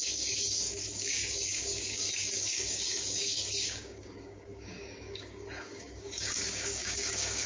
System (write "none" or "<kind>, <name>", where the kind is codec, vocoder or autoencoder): codec, DAC